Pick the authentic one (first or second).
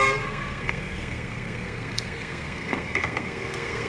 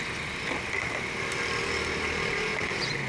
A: second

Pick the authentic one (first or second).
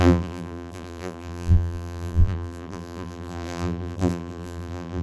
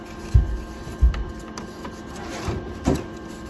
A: second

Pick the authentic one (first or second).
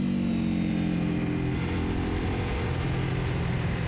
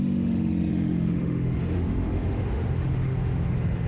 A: first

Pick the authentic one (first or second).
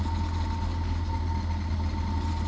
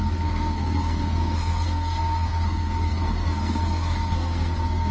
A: first